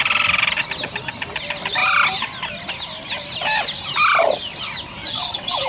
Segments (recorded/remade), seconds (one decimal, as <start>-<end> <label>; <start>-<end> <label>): 0.0-4.9 recorded; 4.9-5.7 remade